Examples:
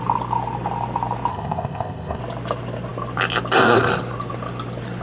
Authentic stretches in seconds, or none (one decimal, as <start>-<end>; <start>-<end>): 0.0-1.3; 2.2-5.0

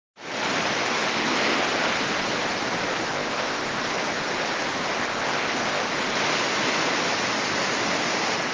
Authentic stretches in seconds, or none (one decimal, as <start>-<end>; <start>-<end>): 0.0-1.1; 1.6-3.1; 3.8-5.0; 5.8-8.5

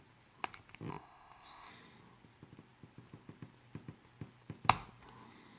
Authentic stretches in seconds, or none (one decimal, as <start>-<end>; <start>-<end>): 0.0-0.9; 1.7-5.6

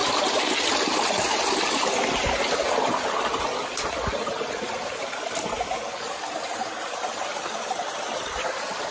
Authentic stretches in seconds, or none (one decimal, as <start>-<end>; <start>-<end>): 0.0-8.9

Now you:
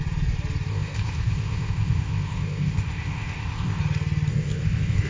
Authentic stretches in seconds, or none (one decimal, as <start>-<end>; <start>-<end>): 0.0-0.7; 3.8-4.3